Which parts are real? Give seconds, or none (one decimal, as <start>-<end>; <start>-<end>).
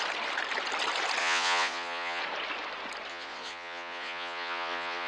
0.0-1.2; 2.2-3.1